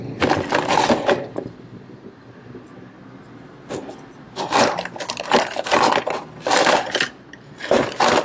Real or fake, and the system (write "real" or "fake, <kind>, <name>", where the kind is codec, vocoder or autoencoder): real